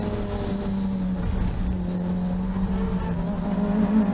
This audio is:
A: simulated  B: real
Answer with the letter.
B